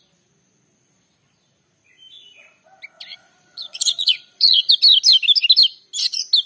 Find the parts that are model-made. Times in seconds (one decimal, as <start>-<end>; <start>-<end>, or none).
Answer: 3.1-4.7